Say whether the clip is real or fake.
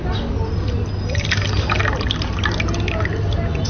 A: real